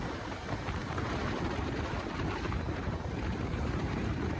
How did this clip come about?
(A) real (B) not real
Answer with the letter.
B